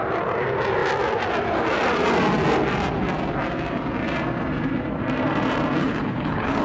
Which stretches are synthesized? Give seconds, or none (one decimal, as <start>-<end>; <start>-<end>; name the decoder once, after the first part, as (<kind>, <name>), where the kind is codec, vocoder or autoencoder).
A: 5.8-6.6 (codec, HILCodec)